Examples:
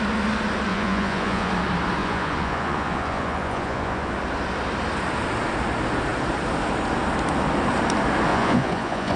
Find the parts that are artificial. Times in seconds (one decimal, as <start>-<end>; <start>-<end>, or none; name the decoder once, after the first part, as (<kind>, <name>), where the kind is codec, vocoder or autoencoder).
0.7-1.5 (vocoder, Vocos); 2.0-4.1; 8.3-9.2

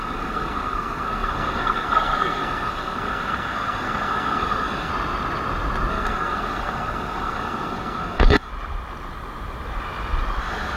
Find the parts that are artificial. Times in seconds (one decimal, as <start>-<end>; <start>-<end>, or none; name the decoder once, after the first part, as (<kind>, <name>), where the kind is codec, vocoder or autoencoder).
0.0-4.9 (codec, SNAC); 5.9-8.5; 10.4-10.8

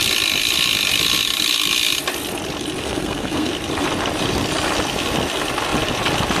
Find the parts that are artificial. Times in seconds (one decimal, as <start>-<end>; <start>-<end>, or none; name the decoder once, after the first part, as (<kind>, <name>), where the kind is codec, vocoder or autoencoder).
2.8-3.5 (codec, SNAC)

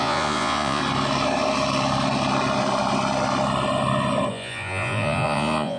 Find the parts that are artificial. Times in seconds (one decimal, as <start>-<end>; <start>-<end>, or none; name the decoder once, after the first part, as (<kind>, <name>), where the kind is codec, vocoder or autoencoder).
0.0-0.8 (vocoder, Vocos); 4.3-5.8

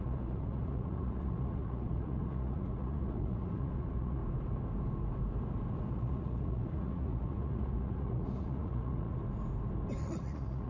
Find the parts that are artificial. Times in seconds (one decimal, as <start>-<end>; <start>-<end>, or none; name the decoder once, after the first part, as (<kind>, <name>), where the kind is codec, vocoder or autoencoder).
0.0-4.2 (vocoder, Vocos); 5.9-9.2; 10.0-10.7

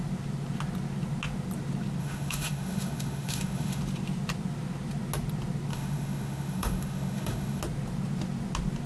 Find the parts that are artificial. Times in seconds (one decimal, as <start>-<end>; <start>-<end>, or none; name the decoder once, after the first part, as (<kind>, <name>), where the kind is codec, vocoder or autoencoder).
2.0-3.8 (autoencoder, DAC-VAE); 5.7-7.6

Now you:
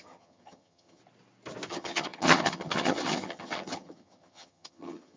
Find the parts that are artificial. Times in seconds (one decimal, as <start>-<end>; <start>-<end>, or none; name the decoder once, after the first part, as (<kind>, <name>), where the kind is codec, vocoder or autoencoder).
0.0-1.0 (vocoder, HiFi-GAN); 1.7-5.2

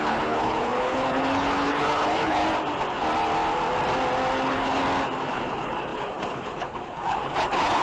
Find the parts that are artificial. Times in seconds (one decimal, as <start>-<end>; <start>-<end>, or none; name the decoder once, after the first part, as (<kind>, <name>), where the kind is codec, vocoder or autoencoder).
0.0-2.4 (codec, HILCodec); 4.3-4.8; 5.3-7.8